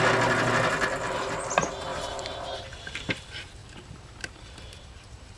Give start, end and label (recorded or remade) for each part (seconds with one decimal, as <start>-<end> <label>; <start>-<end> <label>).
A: 0.0-1.9 recorded; 1.9-3.1 remade; 3.1-5.4 recorded